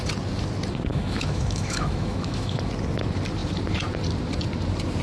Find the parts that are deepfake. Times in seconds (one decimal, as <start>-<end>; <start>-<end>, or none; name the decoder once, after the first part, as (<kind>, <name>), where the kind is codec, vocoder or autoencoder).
0.9-2.7 (autoencoder, DAC-VAE)